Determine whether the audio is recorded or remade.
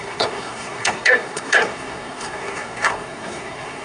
remade